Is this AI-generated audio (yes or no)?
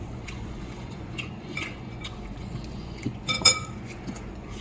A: yes